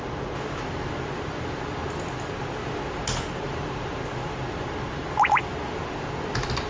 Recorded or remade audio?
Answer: recorded